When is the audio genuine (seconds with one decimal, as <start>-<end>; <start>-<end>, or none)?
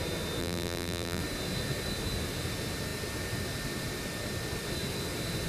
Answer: 0.0-0.4; 1.2-5.5